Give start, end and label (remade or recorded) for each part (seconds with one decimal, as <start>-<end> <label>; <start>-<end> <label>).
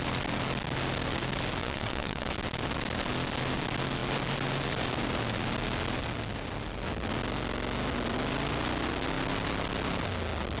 0.0-1.6 recorded; 1.6-2.3 remade; 2.3-10.6 recorded